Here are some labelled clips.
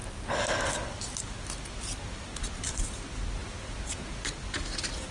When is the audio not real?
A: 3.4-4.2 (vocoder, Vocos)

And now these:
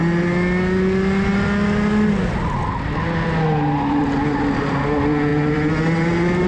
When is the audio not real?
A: none

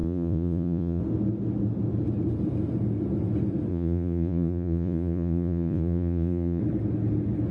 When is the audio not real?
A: 0.0-1.0 (vocoder, Vocos); 3.7-6.6

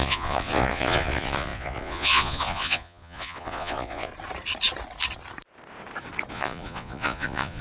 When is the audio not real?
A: 0.0-4.1 (vocoder, Vocos); 6.3-7.6